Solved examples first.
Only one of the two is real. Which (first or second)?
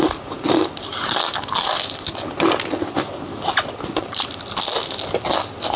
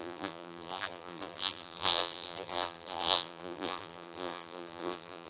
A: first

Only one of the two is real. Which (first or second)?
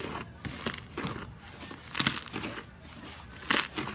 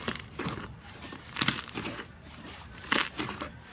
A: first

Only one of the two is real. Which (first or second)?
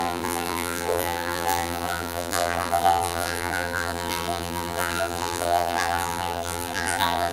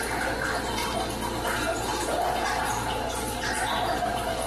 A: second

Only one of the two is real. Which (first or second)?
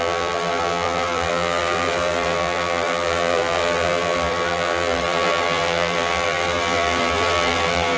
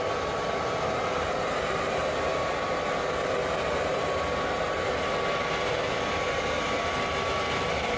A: second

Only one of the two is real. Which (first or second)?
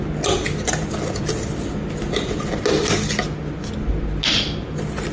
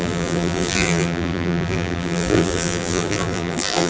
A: first